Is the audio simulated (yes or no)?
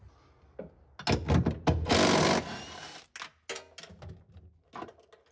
no